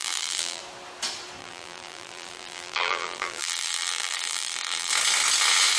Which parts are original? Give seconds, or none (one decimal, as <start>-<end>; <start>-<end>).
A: 0.6-1.4; 4.9-5.8